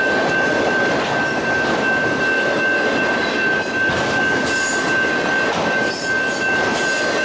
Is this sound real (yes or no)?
yes